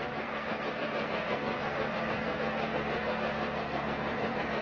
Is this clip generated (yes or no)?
yes